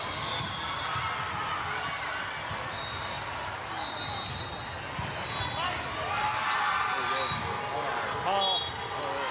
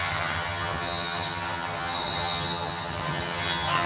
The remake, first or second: second